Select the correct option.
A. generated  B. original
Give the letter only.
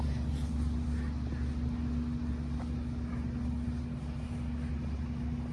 B